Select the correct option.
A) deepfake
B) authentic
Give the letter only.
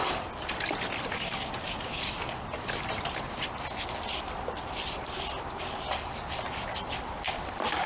B